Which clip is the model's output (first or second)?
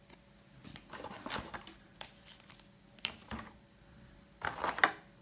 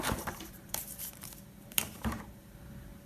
second